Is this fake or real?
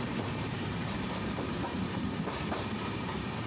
fake